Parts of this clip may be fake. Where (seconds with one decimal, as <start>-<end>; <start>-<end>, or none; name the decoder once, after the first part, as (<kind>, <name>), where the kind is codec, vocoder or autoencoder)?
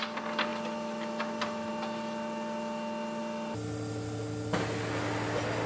0.5-1.7 (vocoder, BigVGAN v2); 3.2-4.2